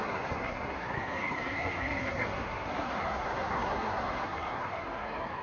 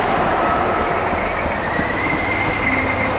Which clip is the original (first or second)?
second